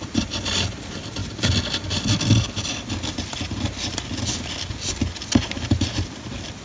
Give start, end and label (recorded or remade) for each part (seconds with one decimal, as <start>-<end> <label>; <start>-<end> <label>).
0.0-6.6 recorded